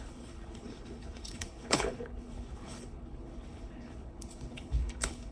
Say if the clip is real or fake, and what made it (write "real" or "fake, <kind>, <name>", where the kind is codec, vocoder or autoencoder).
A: fake, codec, HILCodec